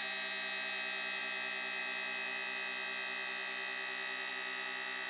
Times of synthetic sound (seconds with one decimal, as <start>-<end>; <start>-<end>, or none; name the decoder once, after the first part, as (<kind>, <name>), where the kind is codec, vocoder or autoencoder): none